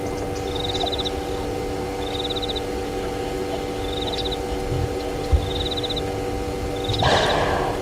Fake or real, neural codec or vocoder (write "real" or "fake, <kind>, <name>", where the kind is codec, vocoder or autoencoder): real